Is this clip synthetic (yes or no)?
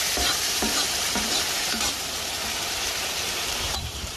yes